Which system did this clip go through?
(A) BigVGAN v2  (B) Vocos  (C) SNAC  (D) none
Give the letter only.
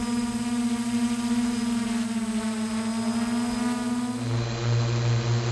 D